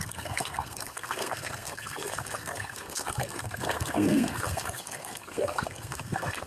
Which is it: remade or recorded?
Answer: remade